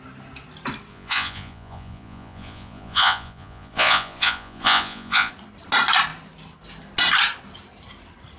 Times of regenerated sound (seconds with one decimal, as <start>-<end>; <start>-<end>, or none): 0.9-5.3